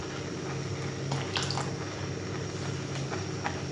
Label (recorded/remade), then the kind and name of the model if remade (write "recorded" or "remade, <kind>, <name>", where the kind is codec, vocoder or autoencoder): recorded